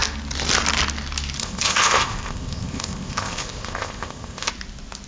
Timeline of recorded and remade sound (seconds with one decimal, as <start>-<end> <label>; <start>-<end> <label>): 0.0-1.4 recorded; 1.4-4.5 remade; 4.5-5.1 recorded